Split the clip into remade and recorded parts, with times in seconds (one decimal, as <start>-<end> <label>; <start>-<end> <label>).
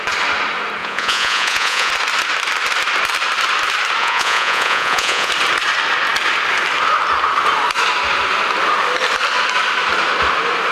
0.0-0.8 recorded; 0.8-1.9 remade; 1.9-4.0 recorded; 4.0-5.3 remade; 5.3-10.7 recorded